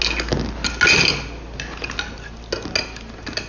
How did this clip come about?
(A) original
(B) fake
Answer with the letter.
A